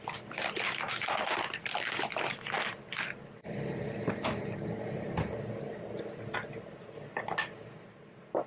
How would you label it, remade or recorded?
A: recorded